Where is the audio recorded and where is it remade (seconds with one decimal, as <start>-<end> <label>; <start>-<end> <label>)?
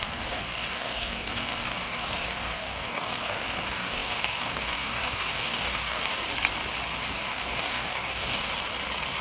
0.0-6.2 remade; 6.2-7.1 recorded; 7.1-8.5 remade; 8.5-9.2 recorded